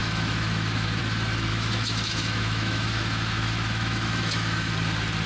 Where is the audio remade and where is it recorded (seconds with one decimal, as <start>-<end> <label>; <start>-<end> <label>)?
0.0-1.0 remade; 1.0-1.5 recorded; 1.5-4.7 remade; 4.7-5.3 recorded